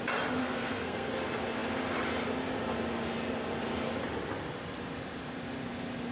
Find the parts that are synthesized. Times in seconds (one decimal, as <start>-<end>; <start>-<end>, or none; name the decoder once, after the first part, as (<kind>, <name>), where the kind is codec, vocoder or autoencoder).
0.4-1.1 (codec, SNAC)

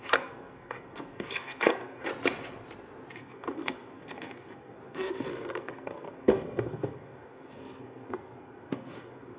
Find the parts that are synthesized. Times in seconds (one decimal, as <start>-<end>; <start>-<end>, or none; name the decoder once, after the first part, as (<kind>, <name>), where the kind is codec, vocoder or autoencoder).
0.0-2.1 (codec, SNAC); 3.1-9.4

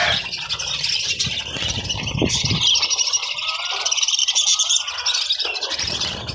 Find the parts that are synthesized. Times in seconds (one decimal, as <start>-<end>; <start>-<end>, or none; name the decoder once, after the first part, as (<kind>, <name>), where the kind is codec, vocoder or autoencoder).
none

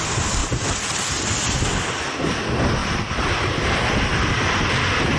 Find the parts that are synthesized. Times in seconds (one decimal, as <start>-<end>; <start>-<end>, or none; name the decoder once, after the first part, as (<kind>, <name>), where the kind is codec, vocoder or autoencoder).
0.4-1.2 (vocoder, BigVGAN v2); 2.8-3.5

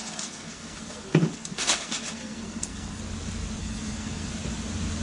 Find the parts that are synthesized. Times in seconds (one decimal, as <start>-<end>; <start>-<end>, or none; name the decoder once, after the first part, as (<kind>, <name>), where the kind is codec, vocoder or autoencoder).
0.0-3.0 (codec, SNAC); 3.6-4.3

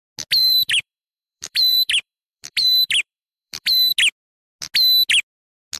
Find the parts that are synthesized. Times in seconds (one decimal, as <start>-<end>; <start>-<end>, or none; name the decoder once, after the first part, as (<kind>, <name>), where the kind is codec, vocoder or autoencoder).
0.4-3.9 (vocoder, BigVGAN v2)